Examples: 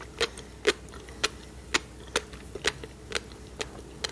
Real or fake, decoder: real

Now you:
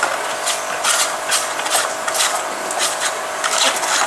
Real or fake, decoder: real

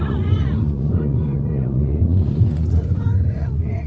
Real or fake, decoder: fake, vocoder, Vocos